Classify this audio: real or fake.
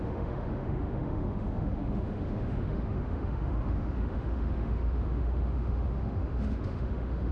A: fake